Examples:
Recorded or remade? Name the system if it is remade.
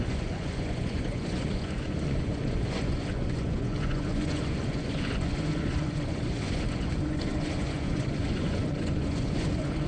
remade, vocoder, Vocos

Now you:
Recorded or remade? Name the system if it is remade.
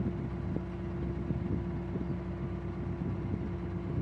recorded